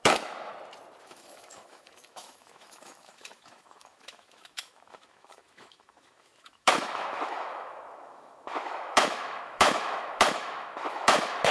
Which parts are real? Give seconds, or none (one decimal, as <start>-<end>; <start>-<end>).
0.5-1.0